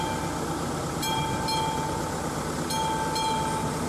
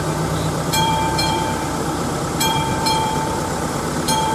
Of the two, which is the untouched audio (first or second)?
first